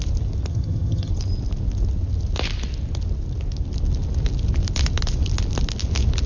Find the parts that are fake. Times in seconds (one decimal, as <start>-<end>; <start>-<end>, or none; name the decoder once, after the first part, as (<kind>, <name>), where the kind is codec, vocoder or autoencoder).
0.5-1.1 (vocoder, HiFi-GAN)

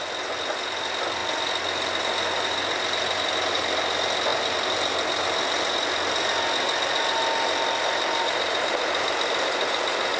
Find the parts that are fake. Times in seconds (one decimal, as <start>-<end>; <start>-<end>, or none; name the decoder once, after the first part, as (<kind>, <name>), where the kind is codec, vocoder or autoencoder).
none

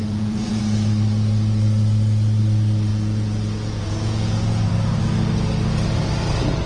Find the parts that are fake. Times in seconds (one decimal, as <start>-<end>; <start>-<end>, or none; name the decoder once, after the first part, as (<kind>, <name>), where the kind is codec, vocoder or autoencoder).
0.0-0.6 (vocoder, Vocos); 2.9-4.7

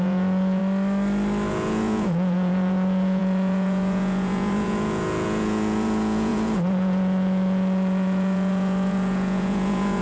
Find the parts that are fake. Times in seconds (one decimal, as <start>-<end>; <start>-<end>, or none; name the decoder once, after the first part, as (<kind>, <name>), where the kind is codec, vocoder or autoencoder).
0.0-0.6 (vocoder, Vocos); 1.5-10.0

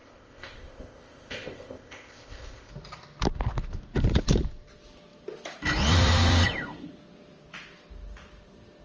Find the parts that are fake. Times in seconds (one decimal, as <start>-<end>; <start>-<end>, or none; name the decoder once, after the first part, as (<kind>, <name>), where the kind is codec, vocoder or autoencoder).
0.0-2.7 (codec, ZipCodec)

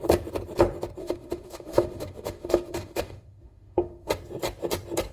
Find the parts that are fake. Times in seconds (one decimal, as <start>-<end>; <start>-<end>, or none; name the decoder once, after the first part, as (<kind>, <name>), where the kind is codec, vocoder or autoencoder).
1.0-4.1 (autoencoder, DAC-VAE)

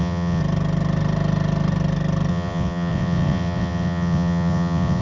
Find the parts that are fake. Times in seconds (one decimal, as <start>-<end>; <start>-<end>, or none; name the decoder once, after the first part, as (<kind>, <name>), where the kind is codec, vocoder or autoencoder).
0.0-0.4 (vocoder, WaveNeXt); 2.3-5.0

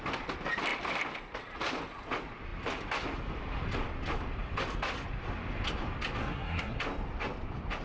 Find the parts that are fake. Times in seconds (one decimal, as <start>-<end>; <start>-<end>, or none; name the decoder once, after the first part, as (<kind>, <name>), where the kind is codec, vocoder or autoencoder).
6.2-6.8 (codec, SNAC)